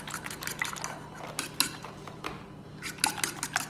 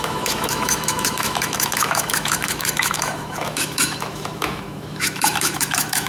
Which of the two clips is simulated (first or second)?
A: second